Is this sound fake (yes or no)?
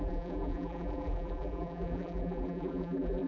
yes